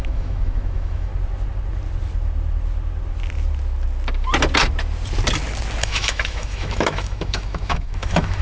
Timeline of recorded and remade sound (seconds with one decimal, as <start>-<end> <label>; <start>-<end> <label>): 0.0-1.1 remade; 1.1-5.8 recorded; 5.8-8.4 remade

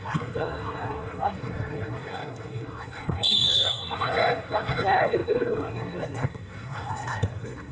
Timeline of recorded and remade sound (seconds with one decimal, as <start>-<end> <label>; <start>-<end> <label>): 0.0-7.7 remade

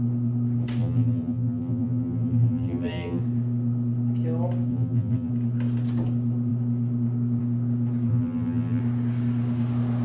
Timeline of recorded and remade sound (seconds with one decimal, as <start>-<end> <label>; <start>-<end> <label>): 0.0-0.8 recorded; 0.8-3.2 remade; 3.2-4.7 recorded; 4.7-5.3 remade; 5.3-8.1 recorded; 8.1-8.8 remade; 8.8-10.0 recorded

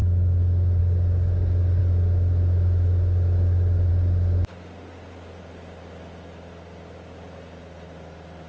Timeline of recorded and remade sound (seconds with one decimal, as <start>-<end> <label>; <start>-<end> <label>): 0.0-0.8 remade; 0.8-1.8 recorded; 1.8-3.9 remade; 3.9-8.5 recorded

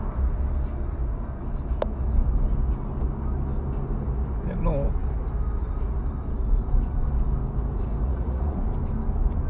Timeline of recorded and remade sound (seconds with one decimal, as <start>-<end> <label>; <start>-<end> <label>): 0.0-8.0 recorded; 8.0-8.6 remade; 8.6-9.5 recorded

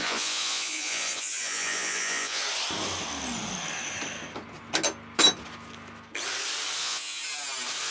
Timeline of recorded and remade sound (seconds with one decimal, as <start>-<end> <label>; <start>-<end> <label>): 0.0-2.4 remade; 2.4-6.8 recorded; 6.8-7.2 remade; 7.2-7.9 recorded

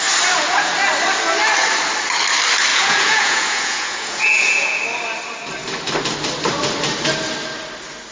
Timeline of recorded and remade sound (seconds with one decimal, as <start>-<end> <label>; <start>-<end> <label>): 0.0-2.7 recorded; 2.7-4.8 remade; 4.8-8.1 recorded

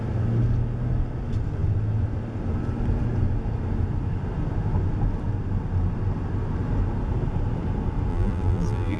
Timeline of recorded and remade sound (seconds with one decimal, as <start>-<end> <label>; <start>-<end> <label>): 0.0-8.1 recorded; 8.1-9.0 remade